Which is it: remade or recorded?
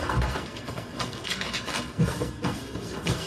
remade